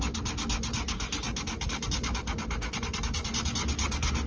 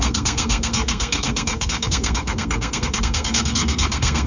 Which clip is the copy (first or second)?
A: second